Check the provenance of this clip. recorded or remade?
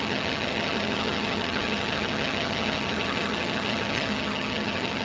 remade